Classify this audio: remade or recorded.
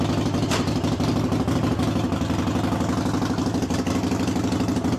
recorded